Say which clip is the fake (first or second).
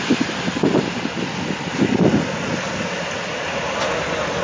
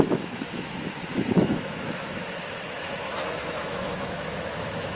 second